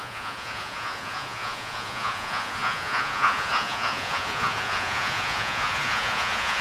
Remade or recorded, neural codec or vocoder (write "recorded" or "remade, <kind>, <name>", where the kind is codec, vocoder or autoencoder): remade, vocoder, Vocos